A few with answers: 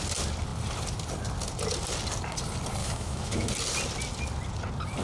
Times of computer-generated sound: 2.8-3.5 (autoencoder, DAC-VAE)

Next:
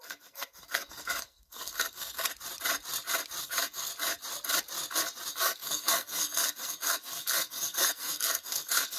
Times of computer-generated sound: 0.0-2.3 (codec, SNAC); 3.4-3.9; 5.3-9.0